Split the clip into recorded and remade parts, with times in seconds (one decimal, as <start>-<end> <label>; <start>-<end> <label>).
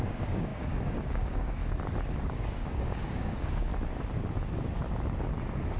0.0-1.6 remade; 1.6-2.2 recorded; 2.2-3.7 remade; 3.7-5.8 recorded